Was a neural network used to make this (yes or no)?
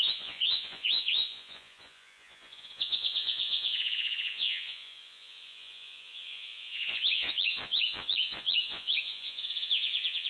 yes